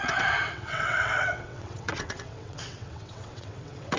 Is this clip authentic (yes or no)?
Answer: no